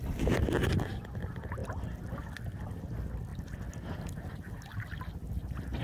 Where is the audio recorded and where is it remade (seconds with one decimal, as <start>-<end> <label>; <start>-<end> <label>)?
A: 0.0-4.7 recorded; 4.7-5.8 remade